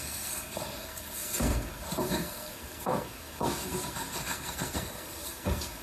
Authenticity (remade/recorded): remade